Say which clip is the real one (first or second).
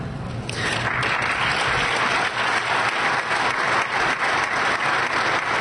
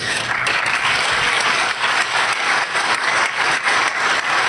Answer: first